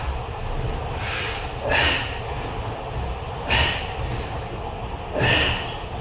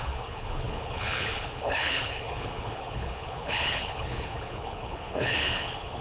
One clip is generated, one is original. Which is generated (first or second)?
second